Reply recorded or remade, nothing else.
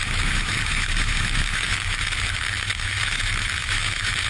remade